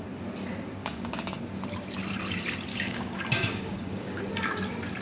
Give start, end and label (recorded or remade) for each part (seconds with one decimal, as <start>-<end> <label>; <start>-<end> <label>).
0.0-0.8 recorded; 0.8-1.4 remade; 1.4-2.7 recorded; 2.7-4.2 remade; 4.2-5.0 recorded